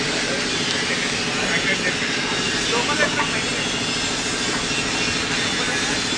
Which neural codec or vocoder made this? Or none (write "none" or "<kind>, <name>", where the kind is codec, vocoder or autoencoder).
none